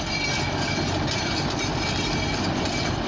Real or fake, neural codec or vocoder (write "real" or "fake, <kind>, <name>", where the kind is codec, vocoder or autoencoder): fake, vocoder, BigVGAN v2